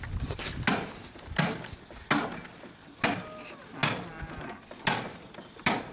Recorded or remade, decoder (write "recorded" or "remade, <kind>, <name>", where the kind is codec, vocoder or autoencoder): recorded